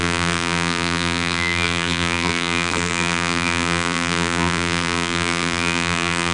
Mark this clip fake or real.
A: fake